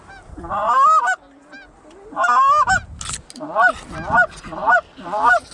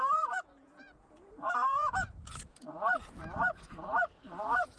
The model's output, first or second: second